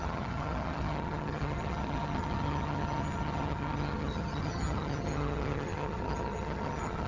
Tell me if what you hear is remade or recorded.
remade